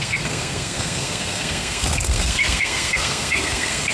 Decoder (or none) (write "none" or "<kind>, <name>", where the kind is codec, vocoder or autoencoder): codec, SNAC